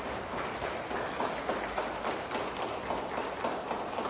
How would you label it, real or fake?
real